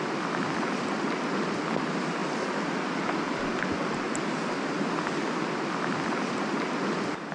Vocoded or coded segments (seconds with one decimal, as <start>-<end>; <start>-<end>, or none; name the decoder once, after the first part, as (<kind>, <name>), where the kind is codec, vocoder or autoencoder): none